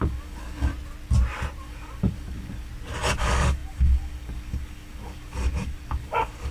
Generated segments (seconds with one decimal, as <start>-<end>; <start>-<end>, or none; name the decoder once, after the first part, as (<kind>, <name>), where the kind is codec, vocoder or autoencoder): 0.0-0.7 (codec, DAC); 1.6-2.7; 3.2-6.5

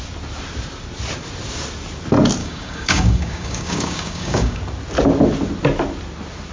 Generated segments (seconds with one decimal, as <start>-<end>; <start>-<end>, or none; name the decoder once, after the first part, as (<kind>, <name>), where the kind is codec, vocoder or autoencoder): 2.4-4.6 (codec, DAC)

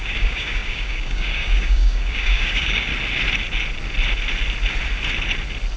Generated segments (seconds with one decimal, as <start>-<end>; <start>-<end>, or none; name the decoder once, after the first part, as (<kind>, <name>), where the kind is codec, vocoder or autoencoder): 0.0-2.9 (codec, DAC)

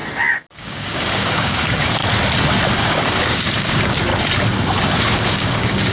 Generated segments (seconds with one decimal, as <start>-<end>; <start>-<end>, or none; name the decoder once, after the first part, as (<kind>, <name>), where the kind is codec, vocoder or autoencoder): 0.6-2.0 (codec, DAC); 2.7-4.1; 5.0-5.9